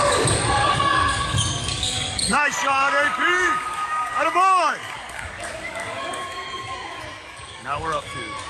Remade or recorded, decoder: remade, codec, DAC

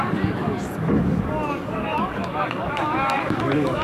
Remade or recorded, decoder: remade, codec, DAC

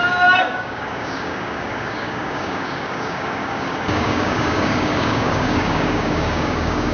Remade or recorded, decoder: remade, codec, DAC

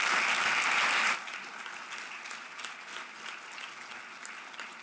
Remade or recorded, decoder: recorded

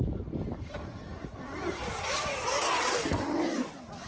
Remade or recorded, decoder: recorded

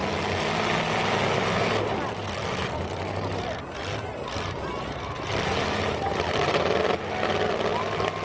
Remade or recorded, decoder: recorded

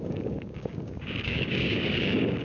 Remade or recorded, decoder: remade, codec, DAC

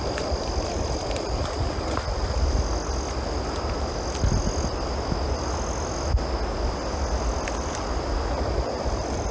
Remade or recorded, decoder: recorded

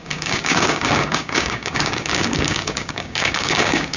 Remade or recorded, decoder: remade, codec, DAC